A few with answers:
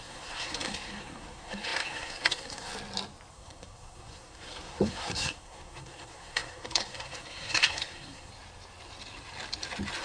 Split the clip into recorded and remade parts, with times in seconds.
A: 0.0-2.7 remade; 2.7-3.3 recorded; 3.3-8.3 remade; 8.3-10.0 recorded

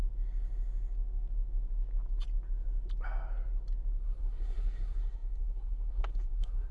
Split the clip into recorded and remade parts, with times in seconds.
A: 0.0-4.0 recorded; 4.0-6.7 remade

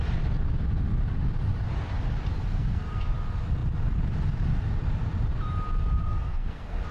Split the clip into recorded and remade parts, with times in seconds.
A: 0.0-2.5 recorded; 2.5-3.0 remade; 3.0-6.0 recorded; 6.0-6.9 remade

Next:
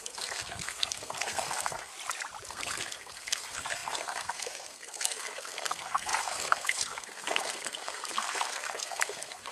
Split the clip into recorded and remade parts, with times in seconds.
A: 0.0-1.9 remade; 1.9-2.5 recorded; 2.5-9.5 remade

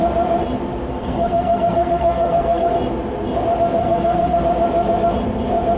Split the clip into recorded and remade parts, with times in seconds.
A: 0.0-0.9 recorded; 0.9-2.7 remade; 2.7-3.8 recorded; 3.8-4.4 remade; 4.4-5.8 recorded